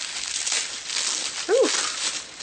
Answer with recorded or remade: recorded